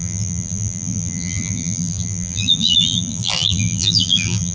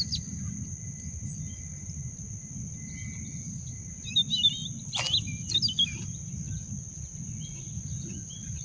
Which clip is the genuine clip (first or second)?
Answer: second